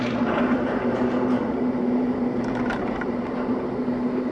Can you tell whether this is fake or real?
fake